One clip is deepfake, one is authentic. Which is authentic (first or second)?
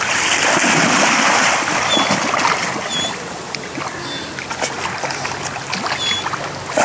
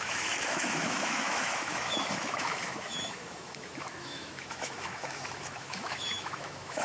first